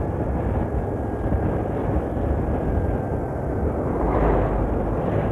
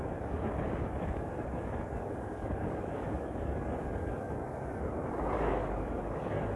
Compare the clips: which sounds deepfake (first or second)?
second